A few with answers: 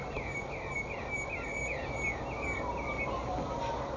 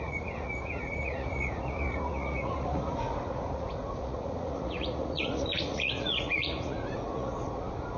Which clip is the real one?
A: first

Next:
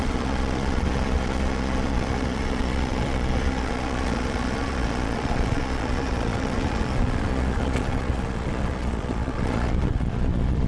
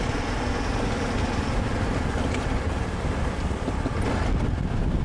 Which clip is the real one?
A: second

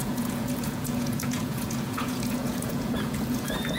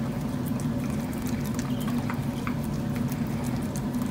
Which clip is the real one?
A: second